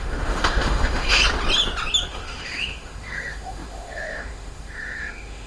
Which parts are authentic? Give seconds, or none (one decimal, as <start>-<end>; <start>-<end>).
1.2-2.1

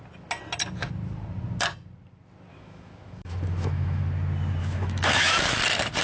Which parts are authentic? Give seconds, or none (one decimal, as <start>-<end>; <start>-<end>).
0.0-2.5; 4.0-4.6; 5.6-6.0

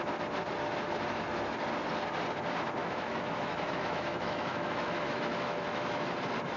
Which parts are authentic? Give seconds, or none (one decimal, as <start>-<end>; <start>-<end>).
0.0-2.8; 6.1-6.6

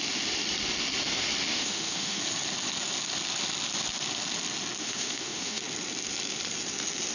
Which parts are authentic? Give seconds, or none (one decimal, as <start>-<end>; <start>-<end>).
0.0-1.5; 2.2-4.8; 5.6-7.1

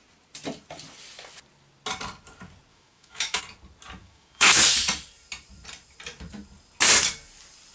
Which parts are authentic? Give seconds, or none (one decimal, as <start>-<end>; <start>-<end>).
0.0-2.7; 3.4-4.0; 4.6-7.7

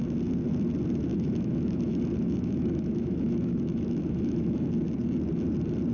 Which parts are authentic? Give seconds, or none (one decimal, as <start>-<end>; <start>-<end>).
0.0-1.1; 4.6-5.9

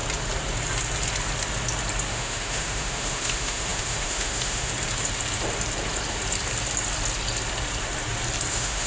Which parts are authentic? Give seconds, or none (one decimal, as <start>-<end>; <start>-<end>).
0.0-2.1; 4.7-8.5

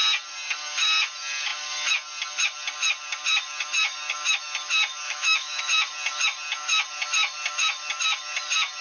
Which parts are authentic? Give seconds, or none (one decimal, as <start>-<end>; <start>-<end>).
0.0-5.0; 5.6-8.8